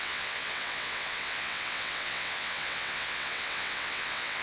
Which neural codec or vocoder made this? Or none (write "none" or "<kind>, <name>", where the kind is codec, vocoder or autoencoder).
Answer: vocoder, WaveNeXt